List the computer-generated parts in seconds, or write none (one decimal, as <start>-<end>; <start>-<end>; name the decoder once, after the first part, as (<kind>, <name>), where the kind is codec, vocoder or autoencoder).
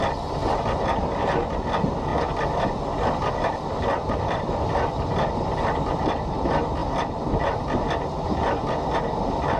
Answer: 2.1-6.3 (vocoder, BigVGAN v2); 6.8-7.5